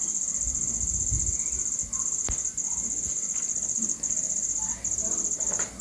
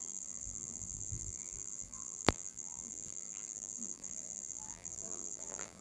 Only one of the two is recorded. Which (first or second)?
first